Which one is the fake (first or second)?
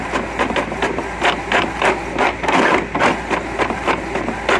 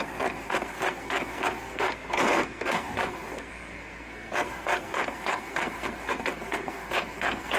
second